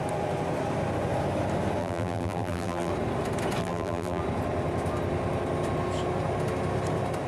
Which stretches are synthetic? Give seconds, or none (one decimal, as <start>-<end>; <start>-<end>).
1.8-2.9; 3.6-4.2